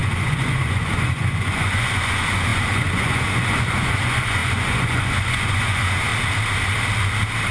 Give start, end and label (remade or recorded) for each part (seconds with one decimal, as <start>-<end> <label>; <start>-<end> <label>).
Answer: 0.0-6.1 remade; 6.1-7.5 recorded